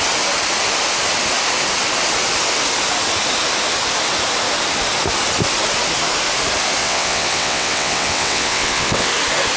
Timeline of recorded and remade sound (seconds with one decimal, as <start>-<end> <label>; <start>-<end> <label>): 0.0-6.8 recorded; 6.8-9.1 remade; 9.1-9.6 recorded

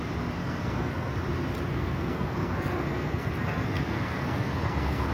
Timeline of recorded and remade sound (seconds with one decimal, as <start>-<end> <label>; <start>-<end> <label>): 0.0-0.4 recorded; 0.4-1.1 remade; 1.1-1.7 recorded; 1.7-5.1 remade

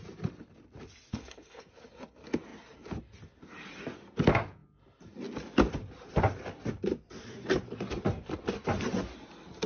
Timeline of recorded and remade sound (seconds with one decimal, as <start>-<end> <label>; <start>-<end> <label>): 0.0-1.1 recorded; 1.1-1.7 remade; 1.7-9.7 recorded

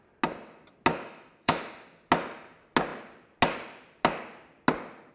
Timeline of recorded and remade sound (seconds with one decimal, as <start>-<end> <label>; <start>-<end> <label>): 0.0-0.9 recorded; 0.9-1.6 remade; 1.6-5.1 recorded

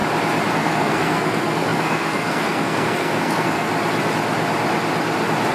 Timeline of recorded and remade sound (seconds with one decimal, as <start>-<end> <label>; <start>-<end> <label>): 0.0-0.5 recorded; 0.5-3.7 remade; 3.7-5.5 recorded

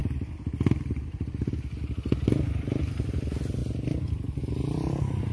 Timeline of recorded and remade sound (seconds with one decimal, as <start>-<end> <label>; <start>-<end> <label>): 0.0-5.3 recorded